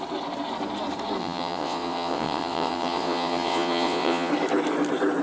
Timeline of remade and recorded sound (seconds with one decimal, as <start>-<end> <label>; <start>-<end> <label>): 0.0-1.2 recorded; 1.2-4.3 remade; 4.3-5.2 recorded